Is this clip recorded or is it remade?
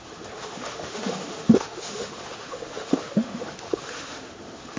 remade